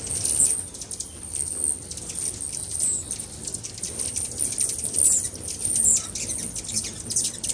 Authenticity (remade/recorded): recorded